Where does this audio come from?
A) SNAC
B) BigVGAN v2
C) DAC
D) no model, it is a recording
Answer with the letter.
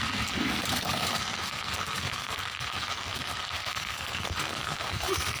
A